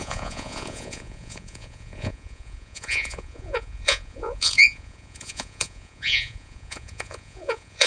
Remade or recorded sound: remade